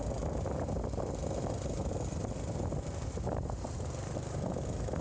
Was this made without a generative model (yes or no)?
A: yes